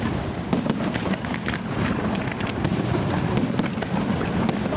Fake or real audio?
real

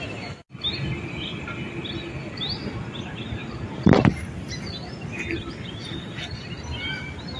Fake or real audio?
real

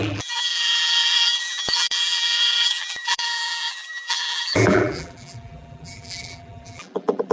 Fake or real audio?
fake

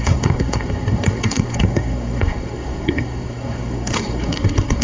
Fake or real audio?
fake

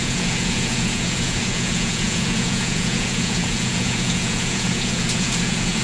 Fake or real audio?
fake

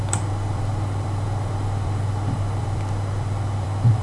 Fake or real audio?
fake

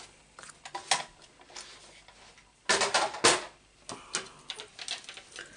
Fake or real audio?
real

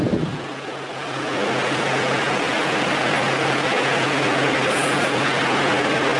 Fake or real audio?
real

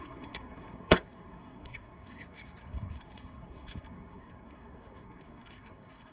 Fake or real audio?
fake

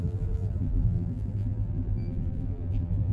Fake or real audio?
fake